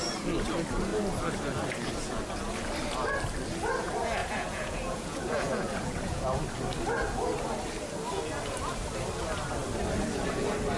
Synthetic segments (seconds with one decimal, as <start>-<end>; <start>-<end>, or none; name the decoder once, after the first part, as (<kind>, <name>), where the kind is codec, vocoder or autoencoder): 4.2-6.4 (vocoder, Vocos)

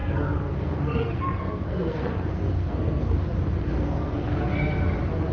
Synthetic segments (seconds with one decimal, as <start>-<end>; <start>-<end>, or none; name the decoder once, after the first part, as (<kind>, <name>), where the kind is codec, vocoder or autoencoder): 0.0-3.2 (codec, SNAC); 3.6-4.5